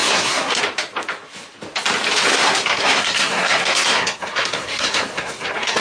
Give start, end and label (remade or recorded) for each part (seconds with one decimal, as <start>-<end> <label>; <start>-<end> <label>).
0.0-0.6 remade; 0.6-2.3 recorded; 2.3-5.8 remade